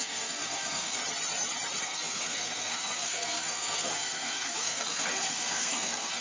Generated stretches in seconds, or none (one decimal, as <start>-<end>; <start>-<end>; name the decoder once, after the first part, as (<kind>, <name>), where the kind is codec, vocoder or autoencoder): 0.0-1.0 (codec, SNAC); 1.8-6.2